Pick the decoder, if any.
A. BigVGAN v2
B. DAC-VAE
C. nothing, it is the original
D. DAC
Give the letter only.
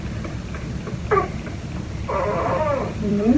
A